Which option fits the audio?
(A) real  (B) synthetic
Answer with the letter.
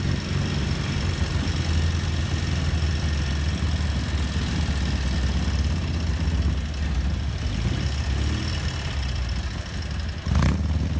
A